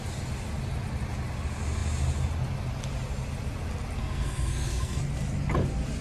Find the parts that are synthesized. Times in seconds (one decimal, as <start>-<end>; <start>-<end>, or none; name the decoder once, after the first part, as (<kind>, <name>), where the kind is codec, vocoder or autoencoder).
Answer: 4.0-5.0 (codec, SNAC)